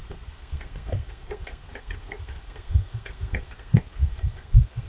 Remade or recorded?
remade